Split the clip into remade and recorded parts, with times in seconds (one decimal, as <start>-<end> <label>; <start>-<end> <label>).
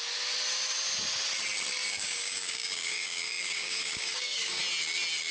0.0-1.9 recorded; 1.9-4.6 remade; 4.6-5.3 recorded